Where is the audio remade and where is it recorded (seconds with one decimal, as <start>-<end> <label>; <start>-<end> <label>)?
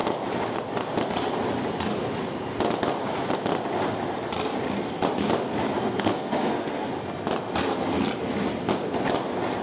0.0-5.7 recorded; 5.7-6.9 remade; 6.9-9.6 recorded